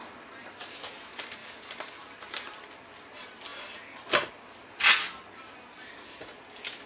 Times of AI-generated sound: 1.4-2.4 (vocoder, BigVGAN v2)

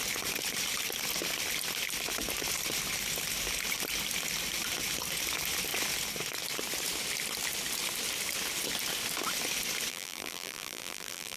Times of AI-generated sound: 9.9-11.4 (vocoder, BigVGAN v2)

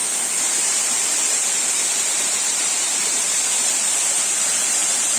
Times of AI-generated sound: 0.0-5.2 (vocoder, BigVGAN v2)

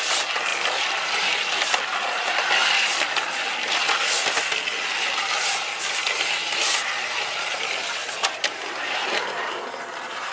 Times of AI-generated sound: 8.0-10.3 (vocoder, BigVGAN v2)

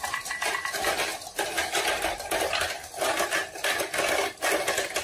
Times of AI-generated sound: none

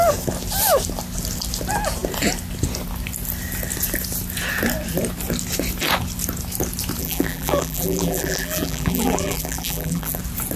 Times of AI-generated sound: 7.0-10.2 (vocoder, BigVGAN v2)

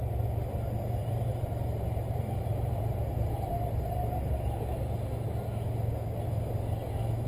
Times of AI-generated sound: 1.0-4.8 (vocoder, BigVGAN v2)

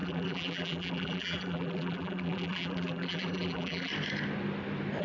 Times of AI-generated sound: 0.0-3.9 (vocoder, BigVGAN v2)